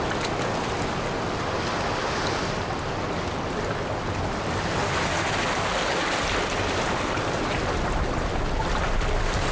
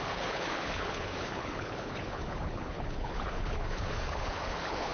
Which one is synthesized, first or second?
second